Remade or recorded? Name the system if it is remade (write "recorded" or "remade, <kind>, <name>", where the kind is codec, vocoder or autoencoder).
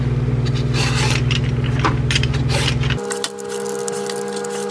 recorded